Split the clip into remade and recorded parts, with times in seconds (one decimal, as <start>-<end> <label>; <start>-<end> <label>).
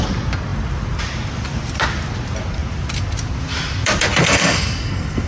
0.0-4.2 recorded; 4.2-5.3 remade